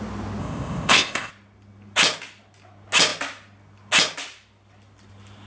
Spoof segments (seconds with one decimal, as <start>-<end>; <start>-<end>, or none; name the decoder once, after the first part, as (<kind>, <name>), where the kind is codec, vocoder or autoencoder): 0.4-1.3 (codec, ZipCodec)